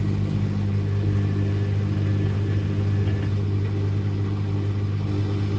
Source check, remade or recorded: recorded